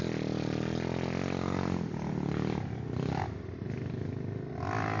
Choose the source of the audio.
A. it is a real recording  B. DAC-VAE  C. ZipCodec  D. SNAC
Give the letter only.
A